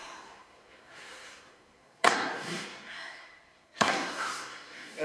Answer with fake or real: fake